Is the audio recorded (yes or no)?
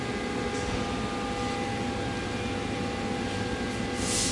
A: yes